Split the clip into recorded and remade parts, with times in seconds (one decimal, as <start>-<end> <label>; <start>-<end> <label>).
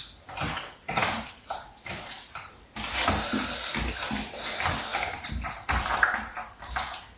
0.0-1.0 recorded; 1.0-2.5 remade; 2.5-4.9 recorded; 4.9-7.2 remade